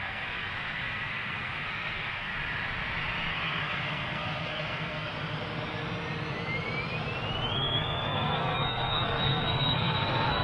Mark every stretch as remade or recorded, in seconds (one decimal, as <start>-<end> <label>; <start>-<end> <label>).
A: 0.0-2.3 remade; 2.3-3.3 recorded; 3.3-5.1 remade; 5.1-7.5 recorded; 7.5-10.4 remade